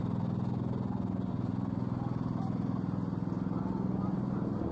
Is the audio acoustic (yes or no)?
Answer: yes